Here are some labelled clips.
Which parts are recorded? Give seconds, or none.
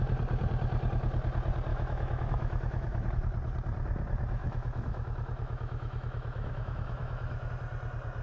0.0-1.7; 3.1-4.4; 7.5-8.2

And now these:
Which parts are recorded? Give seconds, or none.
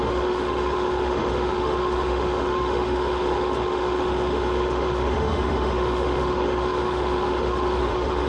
none